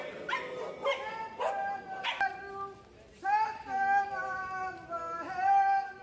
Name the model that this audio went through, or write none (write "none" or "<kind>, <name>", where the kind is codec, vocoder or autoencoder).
none